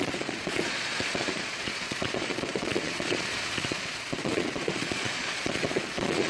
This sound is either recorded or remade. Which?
remade